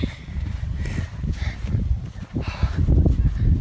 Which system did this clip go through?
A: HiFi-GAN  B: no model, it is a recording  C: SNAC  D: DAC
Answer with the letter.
B